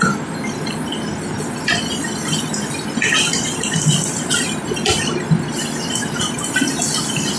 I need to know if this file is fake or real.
real